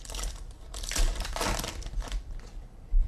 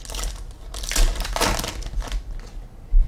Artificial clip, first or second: first